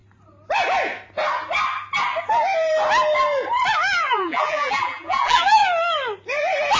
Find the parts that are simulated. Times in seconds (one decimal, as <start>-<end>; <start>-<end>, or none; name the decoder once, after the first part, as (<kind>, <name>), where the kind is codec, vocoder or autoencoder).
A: 4.1-5.6 (vocoder, BigVGAN v2)